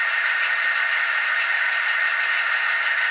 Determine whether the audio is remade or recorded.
recorded